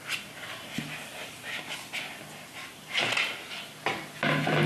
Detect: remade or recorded recorded